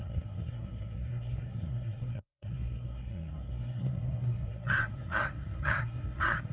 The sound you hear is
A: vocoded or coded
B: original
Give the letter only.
A